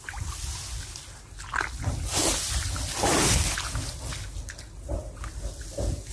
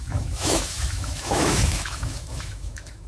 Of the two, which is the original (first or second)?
first